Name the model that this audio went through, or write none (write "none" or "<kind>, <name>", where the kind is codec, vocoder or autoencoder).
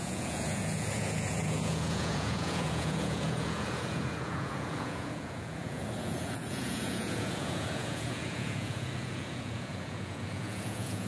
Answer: vocoder, Vocos